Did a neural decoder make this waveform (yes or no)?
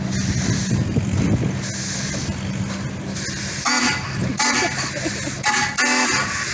no